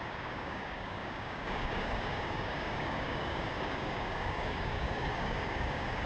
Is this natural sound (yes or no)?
no